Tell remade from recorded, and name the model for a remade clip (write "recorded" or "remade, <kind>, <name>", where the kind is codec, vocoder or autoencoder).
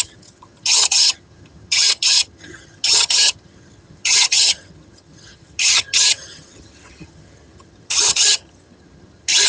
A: remade, vocoder, HiFi-GAN